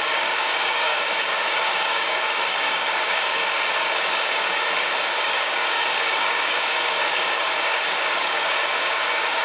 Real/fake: fake